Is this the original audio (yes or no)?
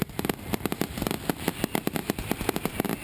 yes